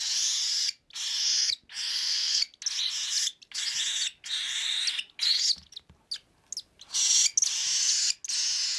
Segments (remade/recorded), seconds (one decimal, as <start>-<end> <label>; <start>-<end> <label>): 0.0-1.9 recorded; 1.9-2.4 remade; 2.4-8.8 recorded